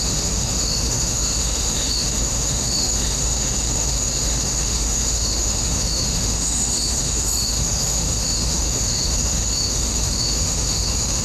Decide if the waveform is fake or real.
fake